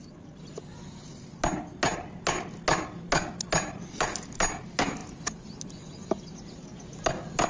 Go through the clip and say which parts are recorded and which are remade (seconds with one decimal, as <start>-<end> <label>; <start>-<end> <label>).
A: 0.0-7.5 recorded